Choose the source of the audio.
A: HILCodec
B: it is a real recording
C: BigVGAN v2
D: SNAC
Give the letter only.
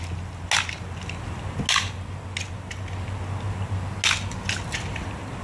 B